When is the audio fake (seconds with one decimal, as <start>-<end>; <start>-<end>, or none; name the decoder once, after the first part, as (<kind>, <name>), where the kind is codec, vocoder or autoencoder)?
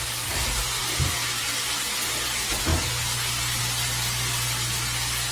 none